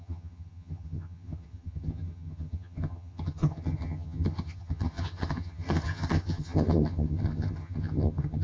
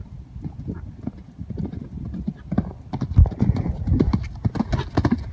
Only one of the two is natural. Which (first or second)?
second